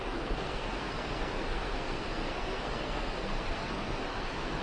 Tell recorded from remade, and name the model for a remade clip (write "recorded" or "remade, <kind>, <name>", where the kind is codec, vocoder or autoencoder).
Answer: remade, codec, SNAC